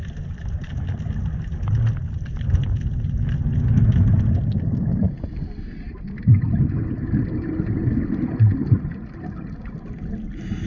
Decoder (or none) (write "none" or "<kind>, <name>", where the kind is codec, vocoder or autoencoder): none